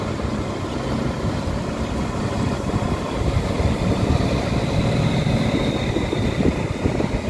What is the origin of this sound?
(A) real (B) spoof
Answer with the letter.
B